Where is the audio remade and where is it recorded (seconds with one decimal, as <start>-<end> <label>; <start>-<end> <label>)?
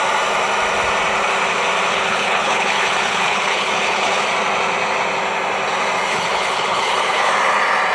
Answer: 0.0-1.9 recorded; 1.9-4.2 remade; 4.2-6.1 recorded; 6.1-7.3 remade; 7.3-7.9 recorded